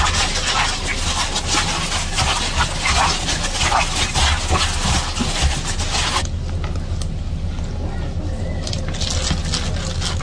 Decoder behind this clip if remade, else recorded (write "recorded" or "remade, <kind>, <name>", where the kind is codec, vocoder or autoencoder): recorded